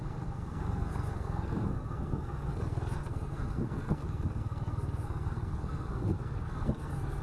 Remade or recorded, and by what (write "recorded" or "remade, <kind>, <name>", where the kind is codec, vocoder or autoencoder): remade, codec, SNAC